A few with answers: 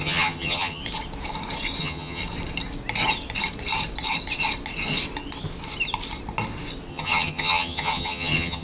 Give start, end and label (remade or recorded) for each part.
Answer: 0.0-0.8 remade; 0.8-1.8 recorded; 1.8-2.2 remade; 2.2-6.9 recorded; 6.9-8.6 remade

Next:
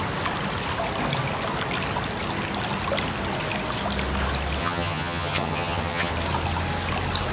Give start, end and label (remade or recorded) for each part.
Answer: 0.0-4.6 recorded; 4.6-6.1 remade; 6.1-7.3 recorded

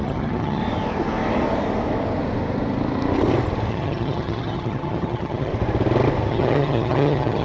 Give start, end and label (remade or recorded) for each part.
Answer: 0.0-0.6 remade; 0.6-3.7 recorded; 3.7-5.5 remade; 5.5-6.3 recorded; 6.3-7.4 remade